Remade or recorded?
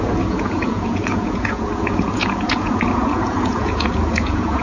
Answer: remade